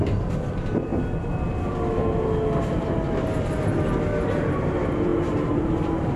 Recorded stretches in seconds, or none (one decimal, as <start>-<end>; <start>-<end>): 0.0-5.1